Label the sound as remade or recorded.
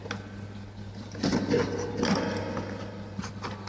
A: recorded